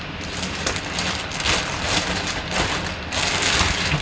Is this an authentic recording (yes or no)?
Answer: yes